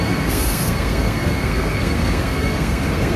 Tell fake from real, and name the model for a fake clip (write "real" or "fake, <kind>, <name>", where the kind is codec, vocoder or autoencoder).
fake, codec, SNAC